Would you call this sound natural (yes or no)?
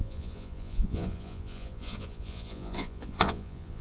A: no